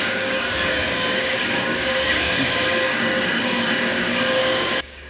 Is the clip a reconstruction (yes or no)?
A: yes